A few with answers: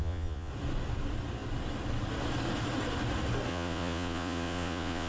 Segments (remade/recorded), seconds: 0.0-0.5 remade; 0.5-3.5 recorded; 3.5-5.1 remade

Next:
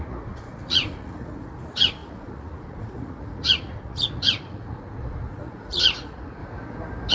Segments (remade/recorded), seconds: 0.0-6.4 remade; 6.4-7.1 recorded

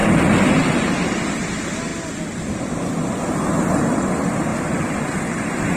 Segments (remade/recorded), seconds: 0.0-5.8 recorded

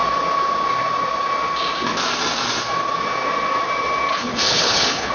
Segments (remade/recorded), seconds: 0.0-4.1 recorded; 4.1-5.1 remade

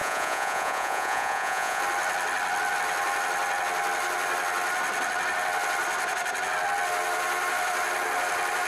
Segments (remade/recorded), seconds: 0.0-1.8 remade; 1.8-8.7 recorded

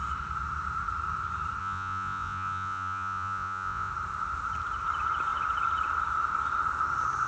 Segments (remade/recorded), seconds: 0.0-1.6 recorded; 1.6-3.9 remade; 3.9-7.3 recorded